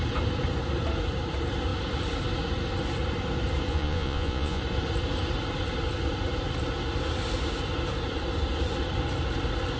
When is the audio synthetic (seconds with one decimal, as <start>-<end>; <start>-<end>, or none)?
3.7-4.6

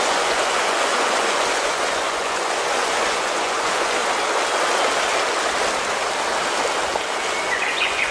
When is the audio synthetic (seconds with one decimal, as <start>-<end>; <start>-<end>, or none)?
0.0-4.0; 7.5-8.1

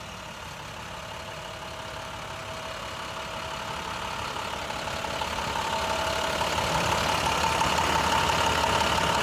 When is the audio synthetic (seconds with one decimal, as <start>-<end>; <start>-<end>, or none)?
none

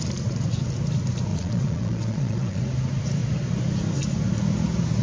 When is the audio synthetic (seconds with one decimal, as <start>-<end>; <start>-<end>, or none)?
1.3-2.6

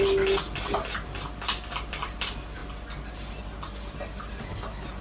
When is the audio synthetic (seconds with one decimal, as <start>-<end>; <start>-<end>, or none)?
none